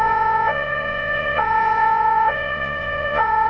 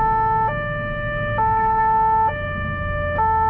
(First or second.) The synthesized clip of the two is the first